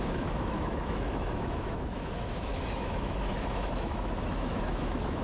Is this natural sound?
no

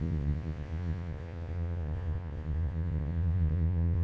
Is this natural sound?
no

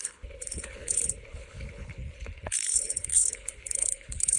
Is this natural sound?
no